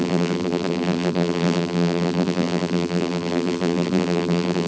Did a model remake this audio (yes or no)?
yes